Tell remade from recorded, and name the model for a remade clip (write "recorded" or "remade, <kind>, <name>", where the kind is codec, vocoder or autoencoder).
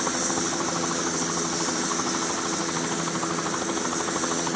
recorded